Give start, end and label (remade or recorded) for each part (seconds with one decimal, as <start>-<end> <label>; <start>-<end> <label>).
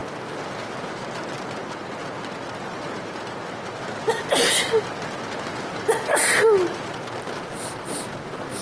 0.0-8.6 recorded